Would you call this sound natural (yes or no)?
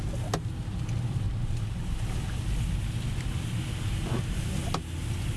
yes